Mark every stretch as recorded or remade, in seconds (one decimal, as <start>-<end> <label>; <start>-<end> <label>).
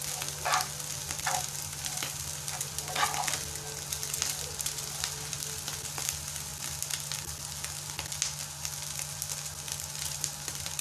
0.0-6.5 remade; 6.5-9.7 recorded; 9.7-10.8 remade